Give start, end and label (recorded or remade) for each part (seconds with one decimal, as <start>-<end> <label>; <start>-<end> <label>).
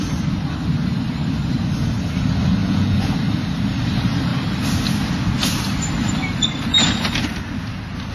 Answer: 0.0-2.6 recorded; 2.6-3.1 remade; 3.1-8.1 recorded